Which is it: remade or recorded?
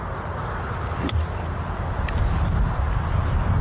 recorded